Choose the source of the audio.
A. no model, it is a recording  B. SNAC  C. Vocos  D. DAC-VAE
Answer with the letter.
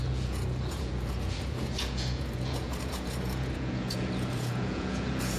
C